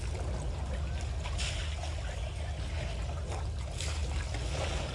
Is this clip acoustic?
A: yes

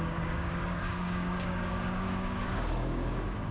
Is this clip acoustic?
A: no